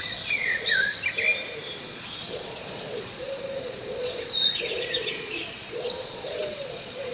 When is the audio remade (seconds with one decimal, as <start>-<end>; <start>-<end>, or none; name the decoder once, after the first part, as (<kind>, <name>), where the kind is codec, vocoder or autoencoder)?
0.0-0.9 (vocoder, Vocos); 1.8-7.1